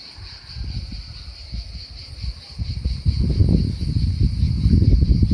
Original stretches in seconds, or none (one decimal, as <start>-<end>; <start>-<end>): 0.0-5.3

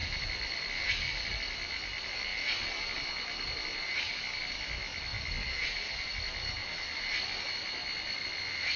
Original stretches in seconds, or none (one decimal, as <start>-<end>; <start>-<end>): 0.0-8.8

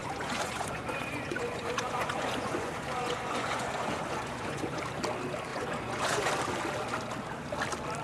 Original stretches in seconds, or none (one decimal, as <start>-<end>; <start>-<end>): 4.8-5.5; 6.3-8.0

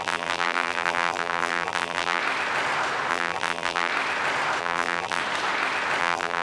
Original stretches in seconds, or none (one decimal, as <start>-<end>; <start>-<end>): 2.2-3.1; 3.9-4.6; 5.2-6.0